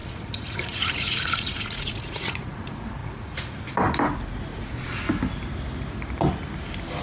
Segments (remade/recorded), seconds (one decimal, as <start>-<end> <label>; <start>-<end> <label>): 0.0-2.6 remade; 2.6-3.0 recorded; 3.0-3.6 remade; 3.6-4.5 recorded; 4.5-5.0 remade; 5.0-7.0 recorded